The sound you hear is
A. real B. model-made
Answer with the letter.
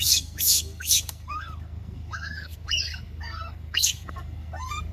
B